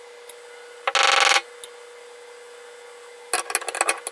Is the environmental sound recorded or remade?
recorded